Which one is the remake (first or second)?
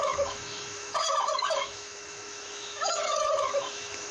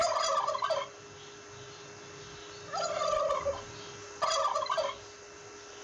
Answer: first